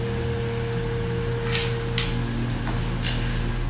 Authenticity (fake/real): real